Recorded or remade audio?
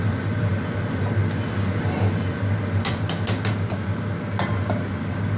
recorded